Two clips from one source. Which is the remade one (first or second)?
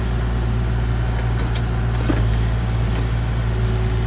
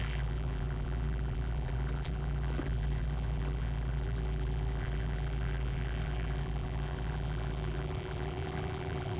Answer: second